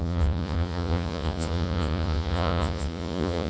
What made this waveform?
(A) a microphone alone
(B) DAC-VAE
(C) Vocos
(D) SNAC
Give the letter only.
C